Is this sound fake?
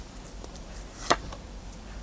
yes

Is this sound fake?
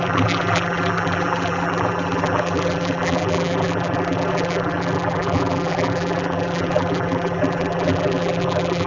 yes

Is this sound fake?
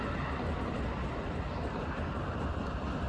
no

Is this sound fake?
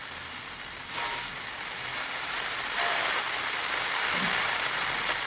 yes